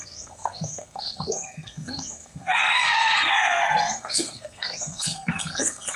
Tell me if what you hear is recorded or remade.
remade